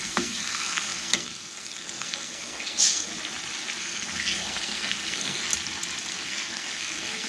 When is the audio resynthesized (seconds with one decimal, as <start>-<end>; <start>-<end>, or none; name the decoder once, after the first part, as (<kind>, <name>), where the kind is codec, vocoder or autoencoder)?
0.0-3.1 (codec, SNAC); 3.8-5.5; 6.1-7.3